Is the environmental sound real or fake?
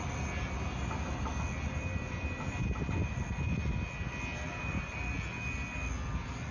real